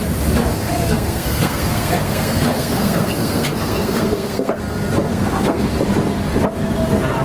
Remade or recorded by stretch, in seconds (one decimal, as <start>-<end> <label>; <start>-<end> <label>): 0.0-0.5 recorded; 0.5-4.6 remade; 4.6-5.1 recorded; 5.1-5.7 remade; 5.7-7.2 recorded